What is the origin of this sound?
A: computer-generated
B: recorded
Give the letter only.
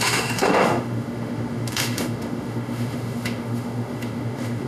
A